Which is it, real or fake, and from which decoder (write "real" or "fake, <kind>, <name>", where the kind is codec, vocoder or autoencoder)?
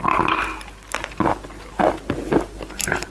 real